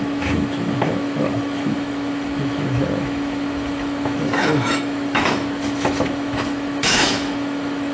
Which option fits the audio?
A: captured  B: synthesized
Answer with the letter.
B